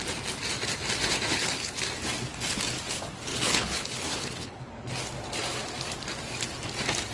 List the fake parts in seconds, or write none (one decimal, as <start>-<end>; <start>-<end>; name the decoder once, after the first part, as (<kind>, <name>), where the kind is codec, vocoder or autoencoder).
1.3-1.8 (codec, HILCodec); 3.3-4.6